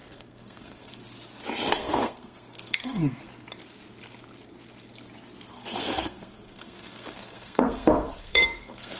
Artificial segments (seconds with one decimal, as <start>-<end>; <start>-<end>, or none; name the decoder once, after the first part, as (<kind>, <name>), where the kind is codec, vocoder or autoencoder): 0.0-1.0 (codec, SNAC); 1.7-3.3; 5.5-9.0